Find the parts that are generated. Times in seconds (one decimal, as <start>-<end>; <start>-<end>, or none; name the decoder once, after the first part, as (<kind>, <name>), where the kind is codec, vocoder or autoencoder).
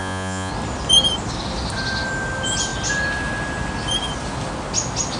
0.0-0.5 (vocoder, Vocos)